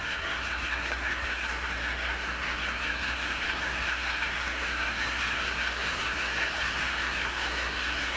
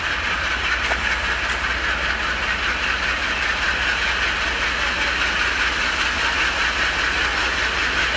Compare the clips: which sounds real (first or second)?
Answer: second